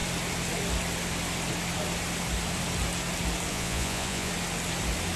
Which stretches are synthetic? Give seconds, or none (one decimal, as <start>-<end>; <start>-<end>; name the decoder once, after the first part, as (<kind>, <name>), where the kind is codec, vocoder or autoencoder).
3.5-4.3 (vocoder, Vocos)